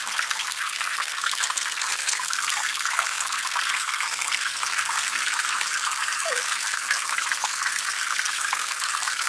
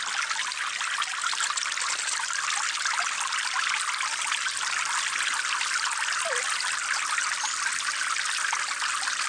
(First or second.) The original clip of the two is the second